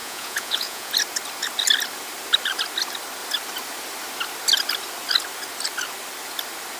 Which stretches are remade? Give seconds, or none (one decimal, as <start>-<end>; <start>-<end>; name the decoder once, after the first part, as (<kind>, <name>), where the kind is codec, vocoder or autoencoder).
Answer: 0.0-0.9 (vocoder, Vocos)